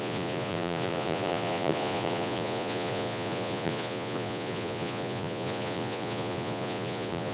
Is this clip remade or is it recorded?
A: remade